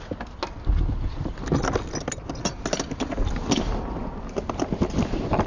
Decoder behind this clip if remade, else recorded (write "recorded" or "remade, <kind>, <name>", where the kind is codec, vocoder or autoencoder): recorded